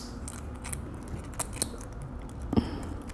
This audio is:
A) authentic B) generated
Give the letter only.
A